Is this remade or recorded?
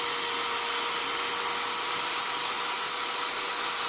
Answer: recorded